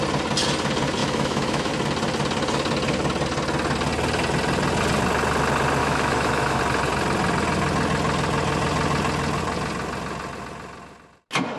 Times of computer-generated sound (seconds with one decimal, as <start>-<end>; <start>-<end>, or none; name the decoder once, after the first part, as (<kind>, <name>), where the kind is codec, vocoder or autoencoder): 1.0-1.7 (autoencoder, DAC-VAE); 5.8-6.6